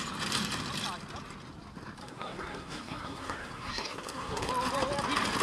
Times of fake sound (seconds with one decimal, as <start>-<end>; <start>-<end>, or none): 2.0-4.5